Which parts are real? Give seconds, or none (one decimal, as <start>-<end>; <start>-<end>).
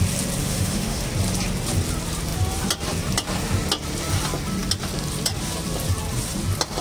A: 0.0-0.4; 1.0-6.8